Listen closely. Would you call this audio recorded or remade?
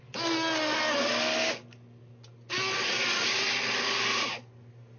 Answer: recorded